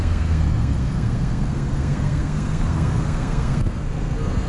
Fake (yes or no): yes